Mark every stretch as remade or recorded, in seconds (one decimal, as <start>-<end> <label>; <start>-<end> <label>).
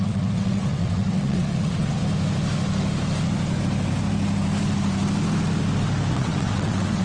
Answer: 0.0-2.0 remade; 2.0-6.1 recorded; 6.1-7.0 remade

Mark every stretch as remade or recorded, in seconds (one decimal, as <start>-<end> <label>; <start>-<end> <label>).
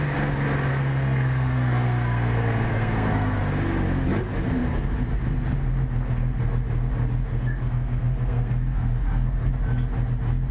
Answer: 0.0-0.7 recorded; 0.7-3.4 remade; 3.4-7.3 recorded; 7.3-9.5 remade; 9.5-10.5 recorded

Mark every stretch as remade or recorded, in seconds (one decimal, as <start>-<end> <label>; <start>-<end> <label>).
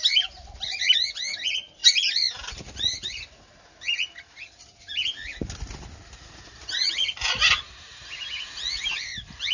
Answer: 0.0-9.5 recorded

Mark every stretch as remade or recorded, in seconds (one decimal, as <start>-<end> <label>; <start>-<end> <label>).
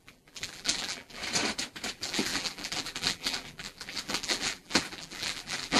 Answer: 0.0-1.2 remade; 1.2-1.9 recorded; 1.9-5.8 remade